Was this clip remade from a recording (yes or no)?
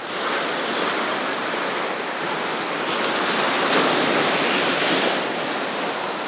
no